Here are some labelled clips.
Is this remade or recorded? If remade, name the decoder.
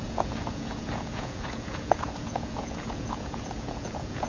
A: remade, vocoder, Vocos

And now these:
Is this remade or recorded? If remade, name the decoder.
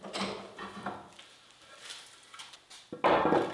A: recorded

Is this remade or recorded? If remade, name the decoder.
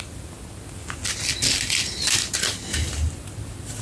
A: recorded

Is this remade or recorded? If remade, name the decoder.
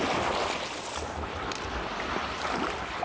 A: recorded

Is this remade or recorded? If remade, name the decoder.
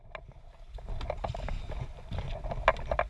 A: recorded